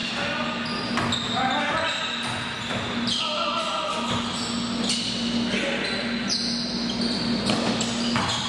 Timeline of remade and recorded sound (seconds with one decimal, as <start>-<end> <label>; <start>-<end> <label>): 0.0-8.5 recorded